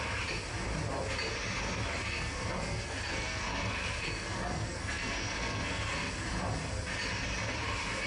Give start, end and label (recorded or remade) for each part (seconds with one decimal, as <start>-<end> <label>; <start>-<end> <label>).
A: 0.0-2.0 recorded; 2.0-6.1 remade; 6.1-8.1 recorded